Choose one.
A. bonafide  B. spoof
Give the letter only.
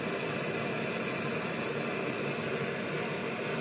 A